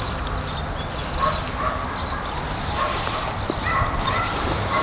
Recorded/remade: recorded